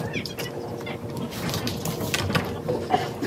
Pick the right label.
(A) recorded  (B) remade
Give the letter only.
A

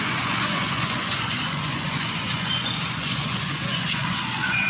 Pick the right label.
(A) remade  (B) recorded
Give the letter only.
A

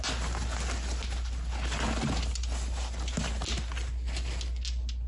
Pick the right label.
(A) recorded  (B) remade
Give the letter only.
A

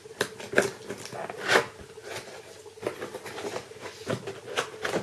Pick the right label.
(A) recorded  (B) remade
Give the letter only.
A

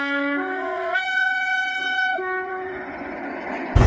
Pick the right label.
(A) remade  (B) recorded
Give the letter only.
A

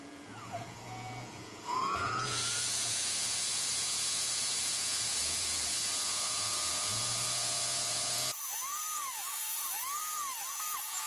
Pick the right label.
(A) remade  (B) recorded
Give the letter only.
A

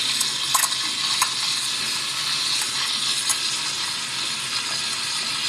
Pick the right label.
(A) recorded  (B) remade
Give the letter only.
A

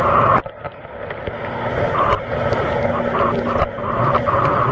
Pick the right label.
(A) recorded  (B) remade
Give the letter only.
A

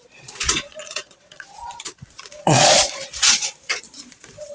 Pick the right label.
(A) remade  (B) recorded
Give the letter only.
A